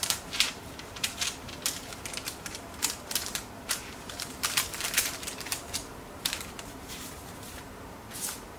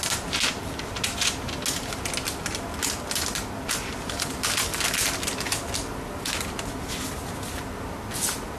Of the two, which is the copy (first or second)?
first